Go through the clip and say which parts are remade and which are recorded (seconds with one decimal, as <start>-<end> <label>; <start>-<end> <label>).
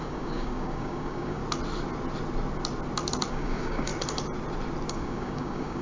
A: 0.0-1.4 remade; 1.4-3.3 recorded; 3.3-3.9 remade; 3.9-4.9 recorded; 4.9-5.8 remade